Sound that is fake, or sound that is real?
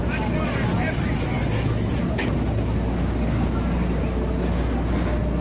real